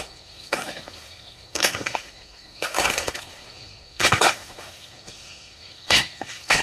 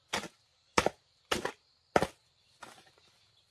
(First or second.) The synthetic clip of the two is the first